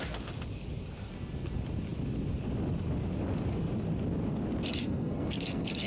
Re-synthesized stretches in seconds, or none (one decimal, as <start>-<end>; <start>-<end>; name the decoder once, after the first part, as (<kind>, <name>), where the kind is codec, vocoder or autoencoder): 4.7-5.9 (codec, SNAC)